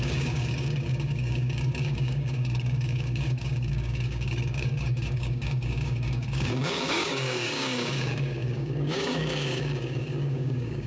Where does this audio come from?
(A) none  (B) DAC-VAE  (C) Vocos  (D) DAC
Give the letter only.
D